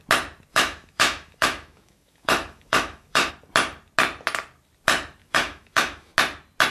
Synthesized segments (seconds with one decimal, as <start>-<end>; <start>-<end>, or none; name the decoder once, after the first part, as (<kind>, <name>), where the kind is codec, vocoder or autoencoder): 0.5-3.3 (autoencoder, DAC-VAE); 5.2-6.1